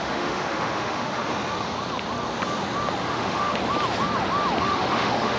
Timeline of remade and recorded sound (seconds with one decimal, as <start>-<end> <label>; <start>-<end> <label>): 0.0-1.2 remade; 1.2-3.0 recorded; 3.0-3.6 remade; 3.6-4.6 recorded; 4.6-5.4 remade